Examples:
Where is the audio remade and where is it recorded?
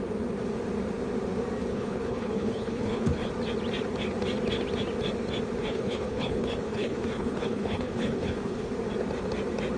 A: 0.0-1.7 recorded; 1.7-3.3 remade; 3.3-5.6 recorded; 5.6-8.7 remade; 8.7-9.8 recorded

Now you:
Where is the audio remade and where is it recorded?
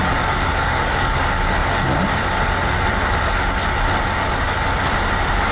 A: 0.0-1.1 remade; 1.1-5.5 recorded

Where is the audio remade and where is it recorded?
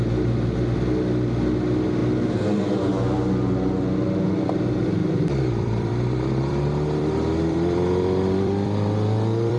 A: 0.0-5.0 recorded; 5.0-9.6 remade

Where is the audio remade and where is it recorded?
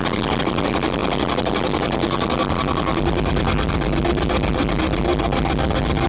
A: 0.0-6.1 recorded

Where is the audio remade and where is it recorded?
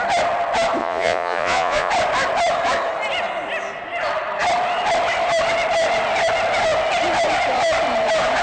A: 0.0-0.8 recorded; 0.8-1.9 remade; 1.9-8.4 recorded